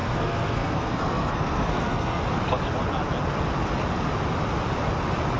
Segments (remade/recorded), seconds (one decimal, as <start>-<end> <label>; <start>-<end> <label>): 0.0-2.2 remade; 2.2-5.4 recorded